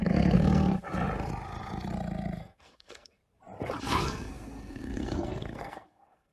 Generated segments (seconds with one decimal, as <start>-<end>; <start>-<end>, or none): 0.0-0.8; 2.4-3.2; 3.8-6.3